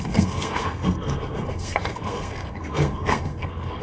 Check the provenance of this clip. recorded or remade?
remade